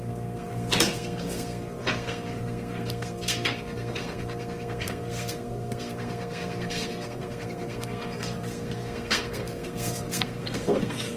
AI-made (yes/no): yes